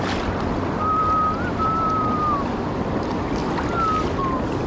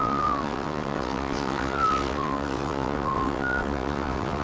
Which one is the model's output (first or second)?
second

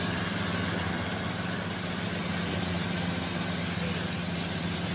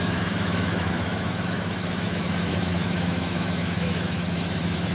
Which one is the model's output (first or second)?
second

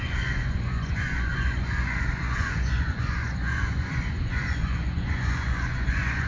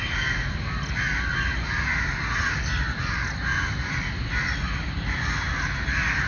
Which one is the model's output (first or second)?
first